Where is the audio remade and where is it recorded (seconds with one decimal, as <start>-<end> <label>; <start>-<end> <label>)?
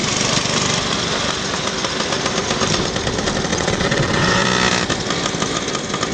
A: 0.0-3.5 recorded; 3.5-4.4 remade; 4.4-6.1 recorded